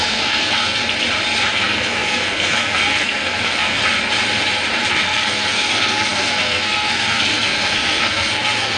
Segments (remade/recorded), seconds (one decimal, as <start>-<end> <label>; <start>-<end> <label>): 0.0-0.8 remade; 0.8-1.5 recorded; 1.5-3.8 remade; 3.8-4.9 recorded; 4.9-8.8 remade